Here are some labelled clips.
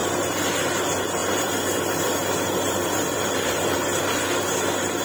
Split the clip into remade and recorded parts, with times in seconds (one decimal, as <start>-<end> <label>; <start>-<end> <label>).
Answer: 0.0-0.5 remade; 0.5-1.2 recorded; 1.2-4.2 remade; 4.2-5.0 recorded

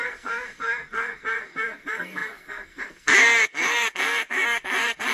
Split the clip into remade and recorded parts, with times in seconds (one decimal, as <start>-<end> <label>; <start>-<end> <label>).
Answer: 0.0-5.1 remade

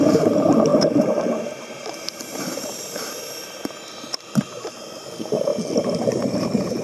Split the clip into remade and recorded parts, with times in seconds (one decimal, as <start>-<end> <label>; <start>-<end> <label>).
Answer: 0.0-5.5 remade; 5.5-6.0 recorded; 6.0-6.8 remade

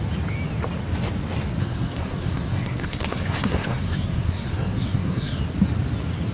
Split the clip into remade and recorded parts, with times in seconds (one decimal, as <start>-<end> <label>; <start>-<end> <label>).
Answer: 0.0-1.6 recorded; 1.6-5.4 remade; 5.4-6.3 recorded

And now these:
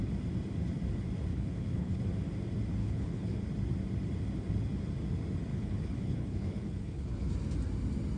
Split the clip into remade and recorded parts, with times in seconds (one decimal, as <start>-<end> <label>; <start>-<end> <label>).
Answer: 0.0-1.3 recorded; 1.3-2.0 remade; 2.0-2.8 recorded; 2.8-3.4 remade; 3.4-5.5 recorded; 5.5-7.3 remade; 7.3-8.2 recorded

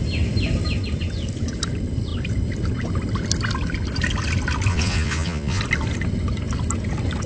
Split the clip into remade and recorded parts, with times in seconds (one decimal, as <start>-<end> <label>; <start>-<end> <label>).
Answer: 0.0-4.7 recorded; 4.7-5.6 remade; 5.6-7.3 recorded